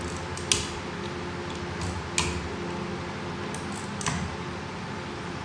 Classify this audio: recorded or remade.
recorded